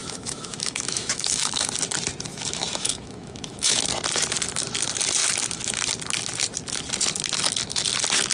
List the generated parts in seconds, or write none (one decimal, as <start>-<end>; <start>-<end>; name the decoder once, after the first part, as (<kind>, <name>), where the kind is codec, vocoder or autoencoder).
0.0-1.7 (autoencoder, DAC-VAE); 2.3-3.8